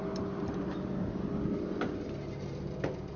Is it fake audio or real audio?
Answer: real